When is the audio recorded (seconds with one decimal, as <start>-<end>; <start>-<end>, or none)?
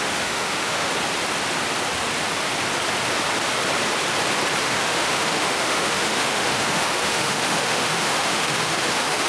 0.9-4.6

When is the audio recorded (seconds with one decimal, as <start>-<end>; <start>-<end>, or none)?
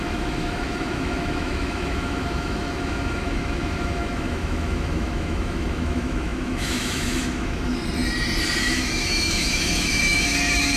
7.8-8.6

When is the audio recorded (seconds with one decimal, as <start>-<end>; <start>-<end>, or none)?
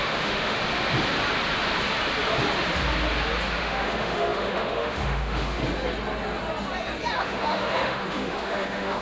0.6-3.6; 5.6-7.2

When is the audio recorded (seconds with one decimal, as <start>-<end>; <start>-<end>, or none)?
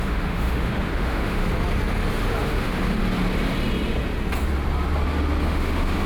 1.4-2.4; 3.0-5.4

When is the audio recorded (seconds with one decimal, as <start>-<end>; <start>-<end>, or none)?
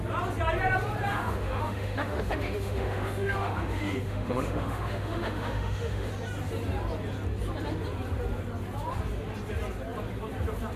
0.0-1.1; 6.1-10.8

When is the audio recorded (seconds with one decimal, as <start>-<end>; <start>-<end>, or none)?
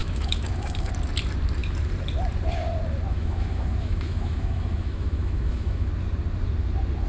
0.9-3.1; 5.9-7.1